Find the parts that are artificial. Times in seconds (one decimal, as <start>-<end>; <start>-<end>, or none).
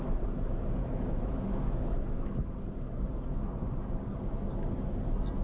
0.8-2.5